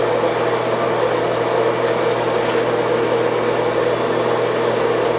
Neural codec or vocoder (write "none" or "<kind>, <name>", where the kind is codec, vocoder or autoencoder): none